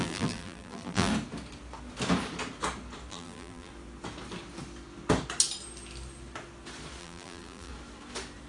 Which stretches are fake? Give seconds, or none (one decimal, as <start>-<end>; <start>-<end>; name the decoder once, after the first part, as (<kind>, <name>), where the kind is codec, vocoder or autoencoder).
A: 0.0-1.1 (vocoder, BigVGAN v2); 3.1-3.7; 7.0-7.7